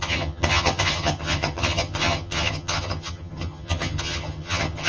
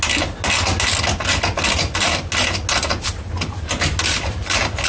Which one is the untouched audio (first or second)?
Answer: second